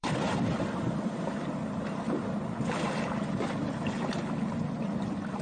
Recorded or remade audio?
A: remade